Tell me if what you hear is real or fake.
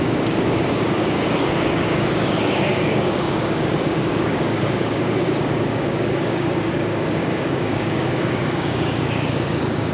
fake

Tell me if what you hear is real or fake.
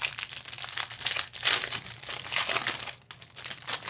real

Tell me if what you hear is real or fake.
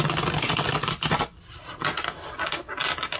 real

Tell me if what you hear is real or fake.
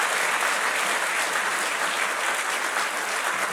real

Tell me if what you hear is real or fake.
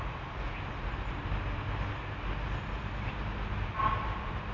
real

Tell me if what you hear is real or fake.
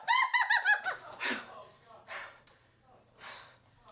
fake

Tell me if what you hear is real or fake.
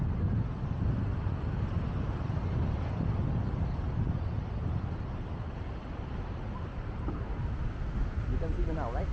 real